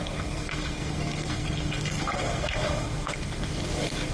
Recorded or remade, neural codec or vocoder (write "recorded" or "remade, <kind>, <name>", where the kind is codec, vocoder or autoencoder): remade, codec, SNAC